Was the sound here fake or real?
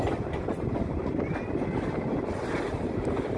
real